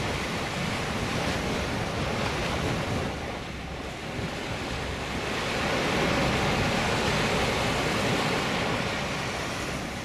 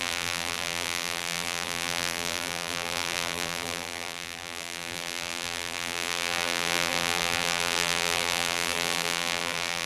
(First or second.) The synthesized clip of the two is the second